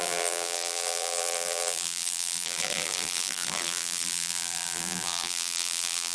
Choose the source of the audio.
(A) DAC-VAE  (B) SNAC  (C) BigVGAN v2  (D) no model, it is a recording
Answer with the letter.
C